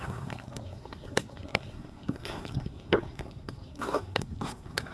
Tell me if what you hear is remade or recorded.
remade